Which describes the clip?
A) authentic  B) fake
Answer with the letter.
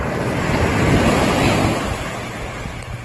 A